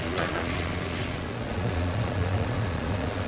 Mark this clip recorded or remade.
remade